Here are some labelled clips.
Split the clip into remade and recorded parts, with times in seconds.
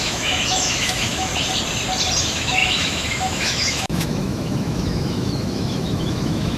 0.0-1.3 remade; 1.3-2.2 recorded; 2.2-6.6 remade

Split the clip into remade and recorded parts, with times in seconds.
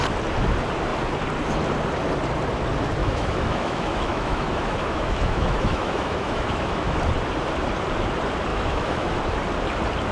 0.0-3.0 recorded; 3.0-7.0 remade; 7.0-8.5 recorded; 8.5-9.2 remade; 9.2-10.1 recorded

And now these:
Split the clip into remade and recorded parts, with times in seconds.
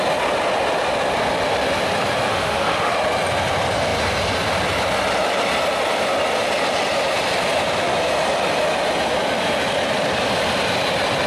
0.0-2.3 recorded; 2.3-2.9 remade; 2.9-11.3 recorded